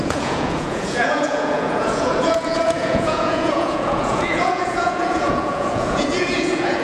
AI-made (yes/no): yes